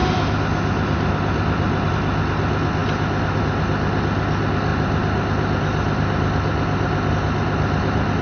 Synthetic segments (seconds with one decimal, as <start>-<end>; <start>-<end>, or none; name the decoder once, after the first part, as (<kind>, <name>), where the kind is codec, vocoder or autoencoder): none